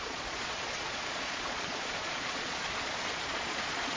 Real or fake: fake